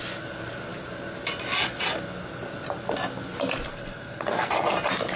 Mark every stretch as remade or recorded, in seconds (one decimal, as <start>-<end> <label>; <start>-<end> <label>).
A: 0.0-3.7 recorded; 3.7-4.5 remade; 4.5-5.2 recorded